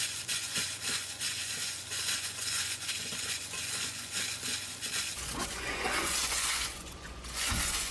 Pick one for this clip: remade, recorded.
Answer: remade